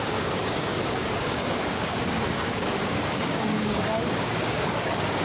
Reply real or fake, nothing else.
fake